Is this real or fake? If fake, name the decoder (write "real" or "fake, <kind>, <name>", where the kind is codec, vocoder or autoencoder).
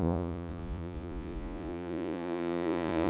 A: fake, vocoder, Vocos